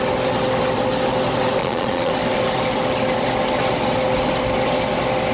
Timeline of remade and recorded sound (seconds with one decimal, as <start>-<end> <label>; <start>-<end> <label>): 0.0-1.6 recorded; 1.6-2.1 remade; 2.1-5.3 recorded